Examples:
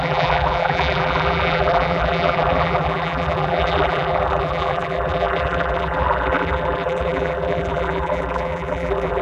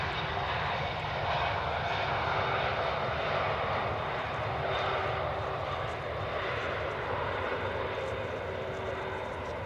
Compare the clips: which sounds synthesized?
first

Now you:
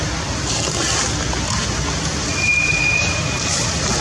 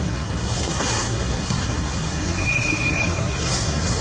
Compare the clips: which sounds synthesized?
second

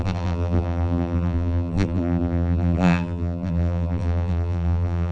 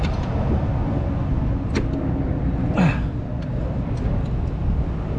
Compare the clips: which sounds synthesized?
first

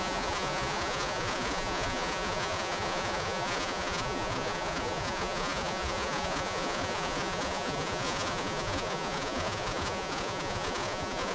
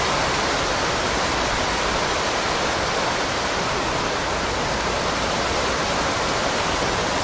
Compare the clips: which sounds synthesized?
first